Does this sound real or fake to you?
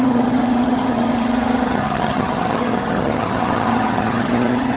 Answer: fake